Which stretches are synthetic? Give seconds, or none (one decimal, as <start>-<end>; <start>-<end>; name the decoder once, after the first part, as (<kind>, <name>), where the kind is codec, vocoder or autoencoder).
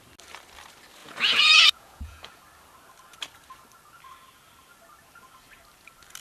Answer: 1.0-2.4 (vocoder, Vocos)